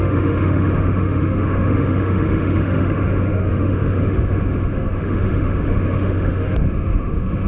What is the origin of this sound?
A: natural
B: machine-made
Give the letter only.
B